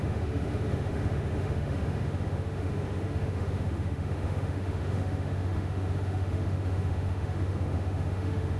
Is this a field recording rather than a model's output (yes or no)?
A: no